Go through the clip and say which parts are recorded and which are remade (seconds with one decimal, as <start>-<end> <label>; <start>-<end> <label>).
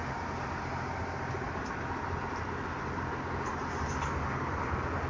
0.0-5.1 recorded